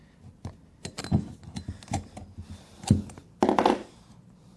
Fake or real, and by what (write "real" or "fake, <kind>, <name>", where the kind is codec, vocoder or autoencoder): real